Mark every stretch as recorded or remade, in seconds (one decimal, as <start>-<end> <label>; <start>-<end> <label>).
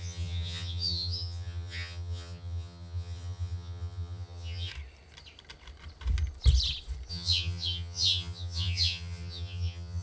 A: 0.0-4.7 remade; 4.7-7.1 recorded; 7.1-10.0 remade